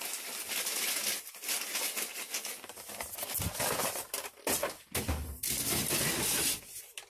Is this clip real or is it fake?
real